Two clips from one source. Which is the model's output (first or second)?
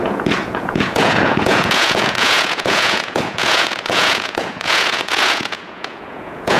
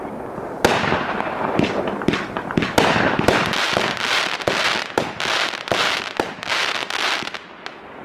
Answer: first